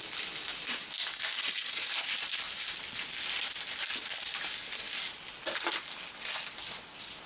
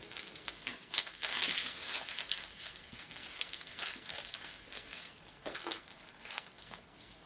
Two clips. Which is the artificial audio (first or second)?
second